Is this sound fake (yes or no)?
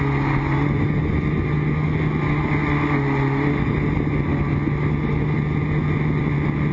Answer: no